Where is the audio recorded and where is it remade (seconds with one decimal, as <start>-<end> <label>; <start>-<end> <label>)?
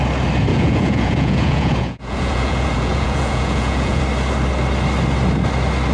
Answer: 0.0-0.5 recorded; 0.5-4.0 remade; 4.0-5.9 recorded